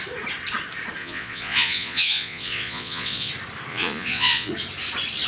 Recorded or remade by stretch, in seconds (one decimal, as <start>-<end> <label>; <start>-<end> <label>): 0.0-1.0 recorded; 1.0-3.3 remade; 3.3-3.7 recorded; 3.7-4.5 remade; 4.5-5.3 recorded